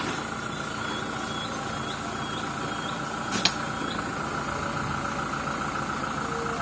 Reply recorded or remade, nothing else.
recorded